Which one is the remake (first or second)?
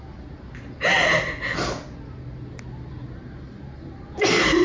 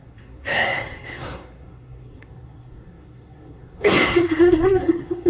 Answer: second